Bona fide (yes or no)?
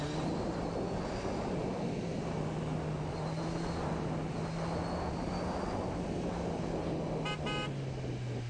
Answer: yes